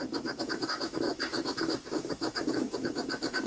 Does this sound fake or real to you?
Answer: fake